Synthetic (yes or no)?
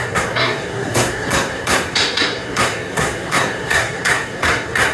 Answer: yes